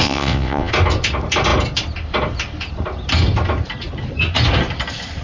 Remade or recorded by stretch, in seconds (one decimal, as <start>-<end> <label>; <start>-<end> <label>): 0.0-0.7 remade; 0.7-5.2 recorded